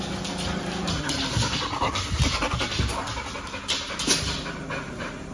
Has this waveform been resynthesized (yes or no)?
no